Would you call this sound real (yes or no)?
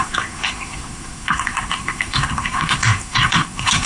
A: no